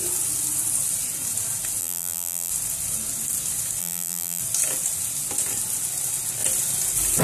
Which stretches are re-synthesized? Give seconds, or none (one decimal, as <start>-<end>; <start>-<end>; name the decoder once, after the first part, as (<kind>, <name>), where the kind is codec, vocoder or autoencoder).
1.8-2.5 (vocoder, BigVGAN v2); 3.8-4.4